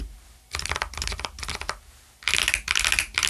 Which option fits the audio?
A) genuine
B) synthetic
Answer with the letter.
A